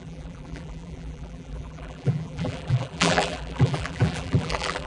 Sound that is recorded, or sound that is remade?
remade